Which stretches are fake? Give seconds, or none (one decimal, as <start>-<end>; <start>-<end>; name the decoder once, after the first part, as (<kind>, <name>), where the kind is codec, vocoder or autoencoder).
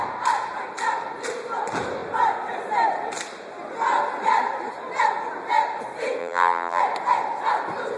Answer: 6.2-6.8 (vocoder, BigVGAN v2)